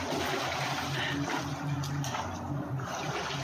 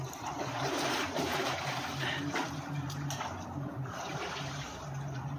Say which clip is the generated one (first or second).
second